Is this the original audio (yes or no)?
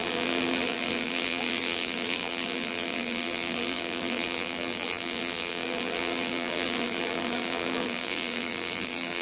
no